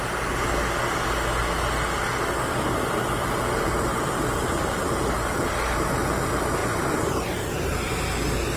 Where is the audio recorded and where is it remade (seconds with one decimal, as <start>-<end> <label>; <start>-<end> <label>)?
0.0-3.9 recorded; 3.9-4.8 remade; 4.8-6.6 recorded; 6.6-7.9 remade; 7.9-8.6 recorded